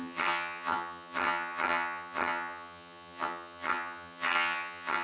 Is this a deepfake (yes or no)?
yes